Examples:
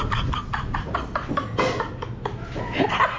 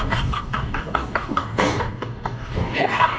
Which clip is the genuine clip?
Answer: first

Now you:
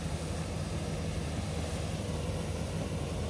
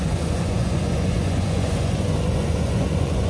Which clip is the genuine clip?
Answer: first